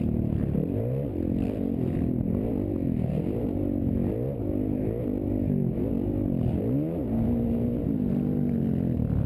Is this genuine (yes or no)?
yes